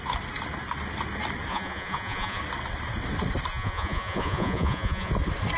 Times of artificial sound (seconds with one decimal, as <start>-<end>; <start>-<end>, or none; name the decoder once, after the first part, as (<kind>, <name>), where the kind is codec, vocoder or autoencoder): 1.5-2.4 (vocoder, Vocos); 3.5-5.1